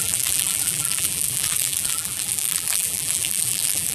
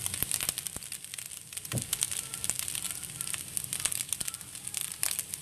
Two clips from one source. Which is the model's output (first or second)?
first